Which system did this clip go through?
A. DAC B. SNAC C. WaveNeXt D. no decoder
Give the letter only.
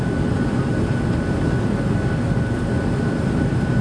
D